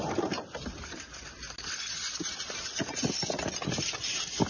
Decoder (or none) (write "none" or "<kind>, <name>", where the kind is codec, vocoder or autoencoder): none